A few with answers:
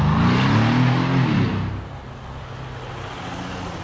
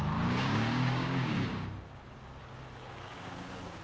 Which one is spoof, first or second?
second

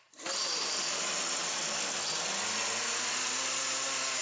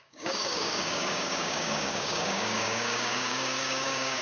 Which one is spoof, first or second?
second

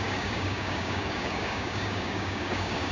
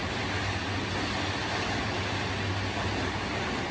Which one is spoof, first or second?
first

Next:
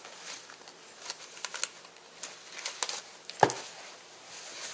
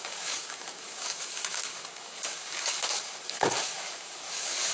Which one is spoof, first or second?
second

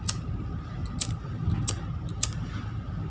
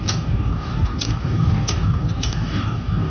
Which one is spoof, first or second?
second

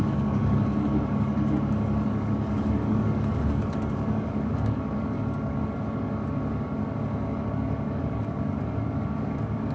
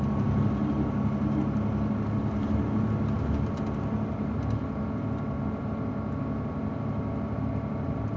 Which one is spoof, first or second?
first